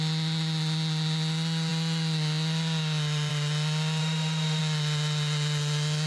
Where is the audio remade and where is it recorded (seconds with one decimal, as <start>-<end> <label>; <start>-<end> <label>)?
0.0-4.0 recorded; 4.0-4.6 remade; 4.6-6.1 recorded